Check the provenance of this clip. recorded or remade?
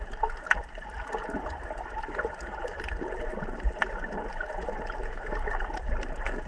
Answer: recorded